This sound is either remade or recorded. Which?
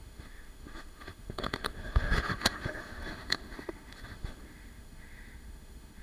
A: remade